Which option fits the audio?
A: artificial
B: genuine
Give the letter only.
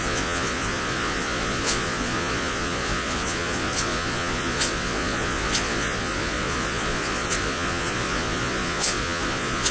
A